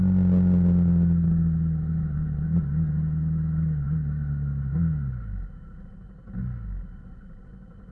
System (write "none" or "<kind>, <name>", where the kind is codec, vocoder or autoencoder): none